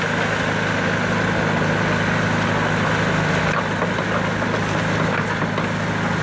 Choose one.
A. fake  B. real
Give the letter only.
B